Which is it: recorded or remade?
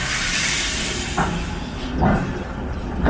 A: recorded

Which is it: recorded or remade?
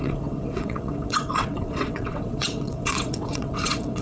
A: remade